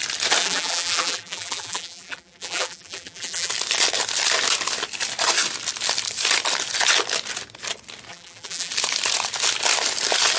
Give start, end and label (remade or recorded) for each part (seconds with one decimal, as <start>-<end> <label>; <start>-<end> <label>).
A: 0.0-0.4 recorded; 0.4-3.5 remade; 3.5-8.1 recorded; 8.1-8.7 remade; 8.7-10.4 recorded